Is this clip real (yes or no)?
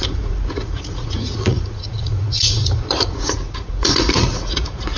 no